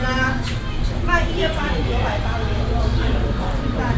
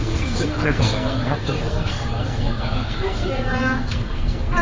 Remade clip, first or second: second